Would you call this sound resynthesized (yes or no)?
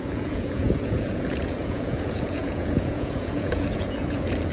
yes